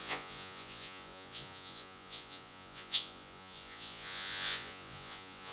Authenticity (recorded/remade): remade